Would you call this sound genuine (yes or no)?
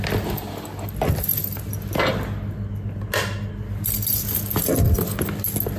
yes